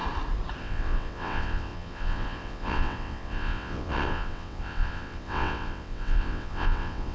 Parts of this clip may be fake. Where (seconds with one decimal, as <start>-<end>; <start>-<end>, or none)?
0.6-7.1